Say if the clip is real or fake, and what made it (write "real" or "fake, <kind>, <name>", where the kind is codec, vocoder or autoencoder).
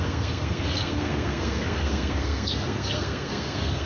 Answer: fake, codec, SNAC